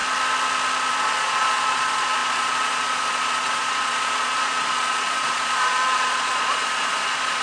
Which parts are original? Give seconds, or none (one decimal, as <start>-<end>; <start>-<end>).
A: 0.0-0.9